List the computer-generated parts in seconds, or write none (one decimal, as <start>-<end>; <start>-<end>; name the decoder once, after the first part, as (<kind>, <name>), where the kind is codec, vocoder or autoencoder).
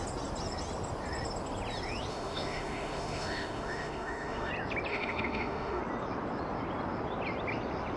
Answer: 2.1-4.5 (autoencoder, DAC-VAE); 4.9-5.8